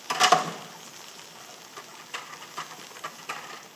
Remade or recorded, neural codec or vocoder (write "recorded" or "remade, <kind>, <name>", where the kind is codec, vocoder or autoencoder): recorded